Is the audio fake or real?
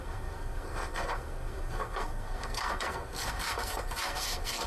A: fake